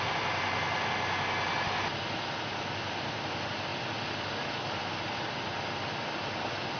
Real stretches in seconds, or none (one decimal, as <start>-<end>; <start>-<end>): 0.0-6.8